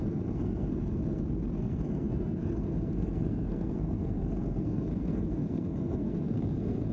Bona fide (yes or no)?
no